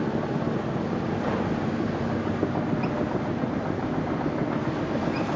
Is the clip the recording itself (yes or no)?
yes